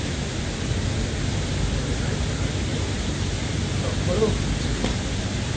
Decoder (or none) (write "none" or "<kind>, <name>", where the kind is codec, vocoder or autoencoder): none